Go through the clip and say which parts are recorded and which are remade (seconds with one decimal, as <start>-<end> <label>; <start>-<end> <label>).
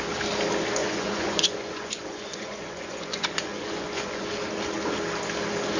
0.0-0.8 recorded; 0.8-4.3 remade; 4.3-5.8 recorded